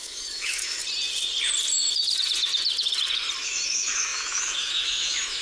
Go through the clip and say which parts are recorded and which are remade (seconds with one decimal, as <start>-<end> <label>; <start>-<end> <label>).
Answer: 0.0-0.8 remade; 0.8-3.4 recorded; 3.4-5.4 remade